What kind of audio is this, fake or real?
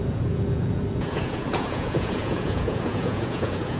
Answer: fake